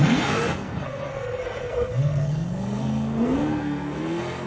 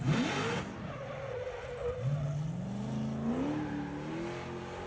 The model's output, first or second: first